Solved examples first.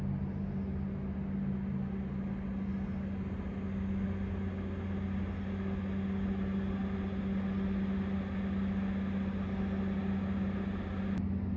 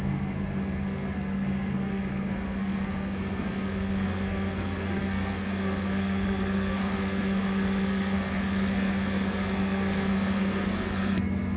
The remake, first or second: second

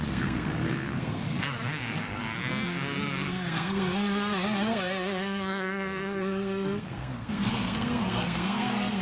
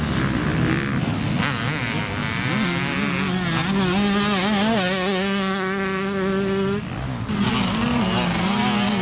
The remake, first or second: first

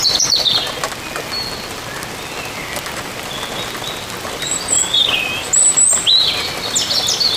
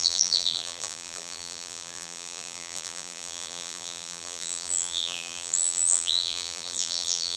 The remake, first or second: second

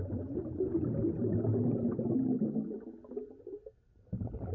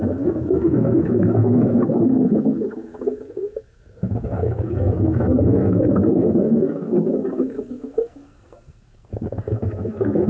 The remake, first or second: second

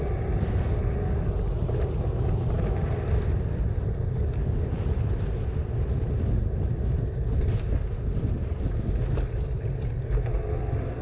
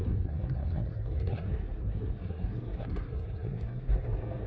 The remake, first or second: second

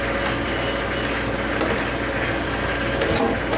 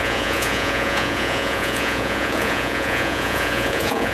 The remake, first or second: second